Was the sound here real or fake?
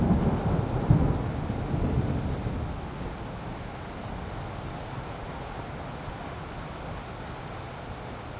real